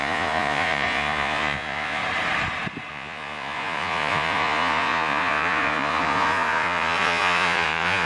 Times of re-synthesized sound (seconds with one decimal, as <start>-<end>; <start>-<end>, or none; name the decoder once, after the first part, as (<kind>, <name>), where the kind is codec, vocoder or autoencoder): 0.0-2.0 (vocoder, Vocos); 2.9-8.1